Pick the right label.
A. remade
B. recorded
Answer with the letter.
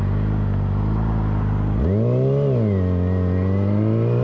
B